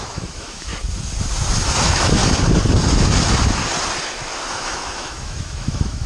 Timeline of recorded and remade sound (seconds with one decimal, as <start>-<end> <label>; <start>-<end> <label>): 0.0-0.7 remade; 0.7-1.8 recorded; 1.8-2.2 remade; 2.2-4.5 recorded; 4.5-6.1 remade